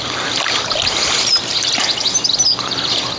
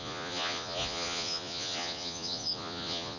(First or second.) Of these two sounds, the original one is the first